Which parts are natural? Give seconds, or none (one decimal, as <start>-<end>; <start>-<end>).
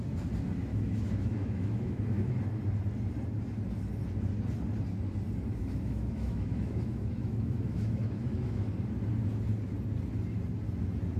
0.0-0.7; 2.3-5.6; 8.7-11.2